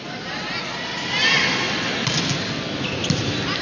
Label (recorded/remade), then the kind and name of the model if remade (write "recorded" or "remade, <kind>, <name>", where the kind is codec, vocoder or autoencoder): recorded